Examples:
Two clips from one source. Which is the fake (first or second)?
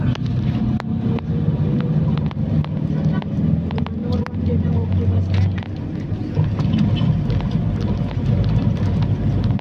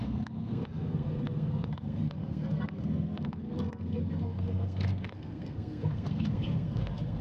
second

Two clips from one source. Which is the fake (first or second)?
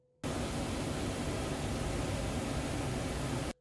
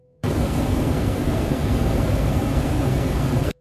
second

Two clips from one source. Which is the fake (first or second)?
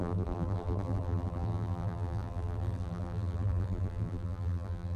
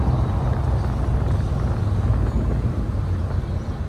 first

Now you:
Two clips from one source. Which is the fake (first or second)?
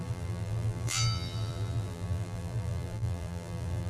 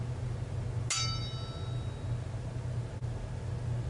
first